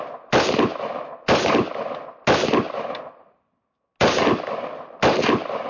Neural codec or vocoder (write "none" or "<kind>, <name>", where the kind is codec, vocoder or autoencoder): none